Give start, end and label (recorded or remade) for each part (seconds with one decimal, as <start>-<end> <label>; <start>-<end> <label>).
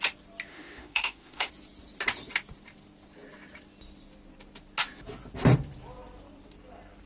0.0-0.5 recorded; 0.5-1.5 remade; 1.5-7.1 recorded